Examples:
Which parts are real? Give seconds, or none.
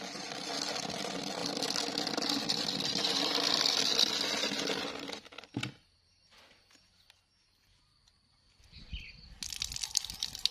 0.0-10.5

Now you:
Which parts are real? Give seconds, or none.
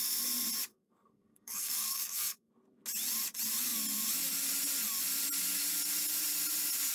0.0-0.7; 2.5-6.9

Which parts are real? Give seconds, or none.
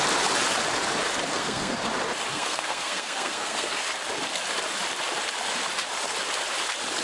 0.0-1.3; 1.8-2.3; 3.8-7.0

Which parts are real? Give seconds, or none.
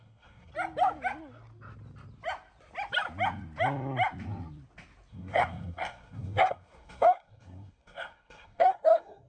0.5-5.1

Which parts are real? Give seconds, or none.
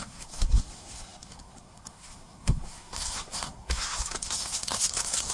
none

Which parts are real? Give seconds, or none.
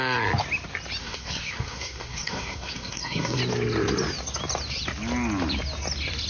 0.0-1.0; 3.4-6.3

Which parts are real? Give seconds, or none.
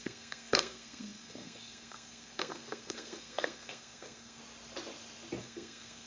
4.4-5.4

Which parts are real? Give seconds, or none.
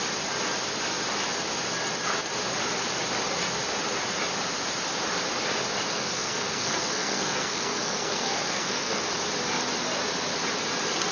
0.0-5.9; 9.0-11.1